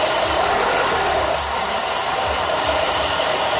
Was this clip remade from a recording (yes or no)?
no